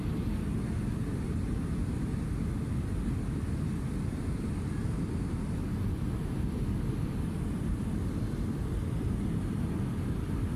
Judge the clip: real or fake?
real